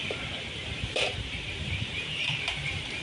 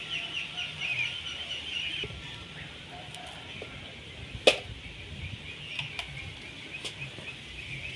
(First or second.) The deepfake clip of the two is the first